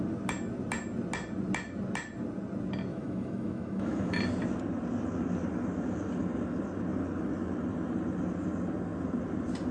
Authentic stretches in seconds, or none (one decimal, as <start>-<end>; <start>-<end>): 0.0-2.9; 4.2-9.7